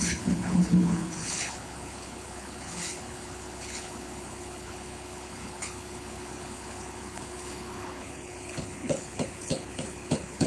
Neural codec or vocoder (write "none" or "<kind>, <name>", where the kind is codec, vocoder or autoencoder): codec, HILCodec